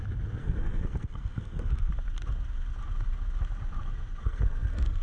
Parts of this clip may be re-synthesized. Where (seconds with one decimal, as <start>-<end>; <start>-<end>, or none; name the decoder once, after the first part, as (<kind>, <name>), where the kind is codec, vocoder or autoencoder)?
0.4-1.9 (codec, SNAC); 4.2-5.0

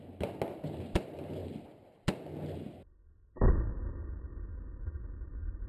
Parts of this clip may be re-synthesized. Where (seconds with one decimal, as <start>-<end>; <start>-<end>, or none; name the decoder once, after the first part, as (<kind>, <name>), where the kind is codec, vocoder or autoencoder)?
none

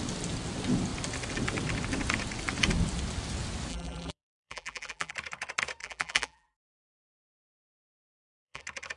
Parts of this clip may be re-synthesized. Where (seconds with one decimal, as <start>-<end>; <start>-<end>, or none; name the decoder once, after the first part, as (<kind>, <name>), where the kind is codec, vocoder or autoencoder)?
3.7-5.1 (vocoder, BigVGAN v2); 5.8-8.6

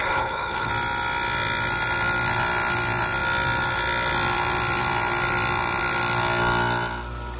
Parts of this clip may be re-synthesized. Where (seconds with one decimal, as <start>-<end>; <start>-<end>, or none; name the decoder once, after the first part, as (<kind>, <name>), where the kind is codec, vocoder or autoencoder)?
0.0-0.7 (codec, HILCodec)

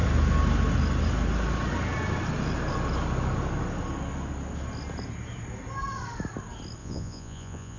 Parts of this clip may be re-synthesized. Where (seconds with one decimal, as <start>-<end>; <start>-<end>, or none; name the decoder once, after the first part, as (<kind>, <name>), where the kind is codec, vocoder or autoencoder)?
6.8-7.8 (vocoder, Vocos)